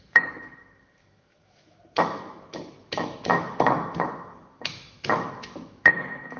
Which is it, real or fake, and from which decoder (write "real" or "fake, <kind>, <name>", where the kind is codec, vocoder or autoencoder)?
fake, autoencoder, DAC-VAE